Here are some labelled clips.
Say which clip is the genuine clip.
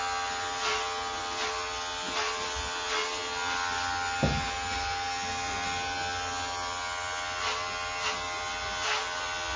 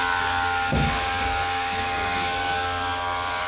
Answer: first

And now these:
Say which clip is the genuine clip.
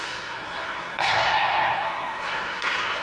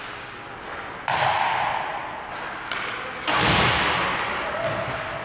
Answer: second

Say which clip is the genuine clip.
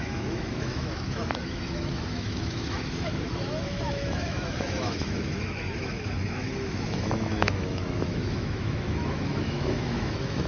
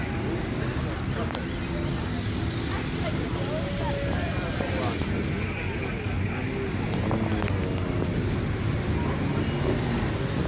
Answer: second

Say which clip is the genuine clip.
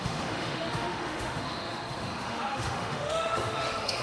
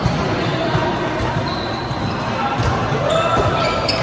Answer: second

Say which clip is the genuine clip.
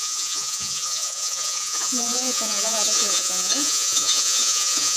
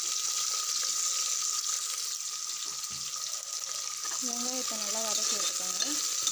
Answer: second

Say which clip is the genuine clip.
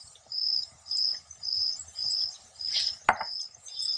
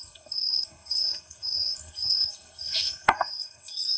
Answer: first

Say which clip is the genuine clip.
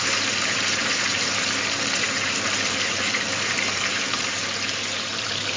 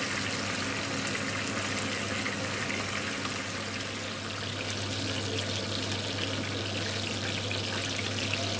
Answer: second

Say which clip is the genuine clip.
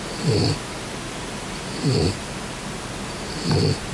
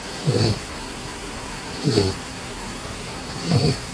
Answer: first